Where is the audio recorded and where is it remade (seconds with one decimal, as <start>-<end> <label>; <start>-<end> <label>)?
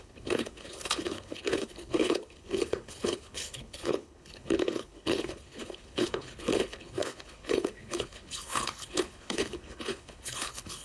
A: 0.0-10.8 remade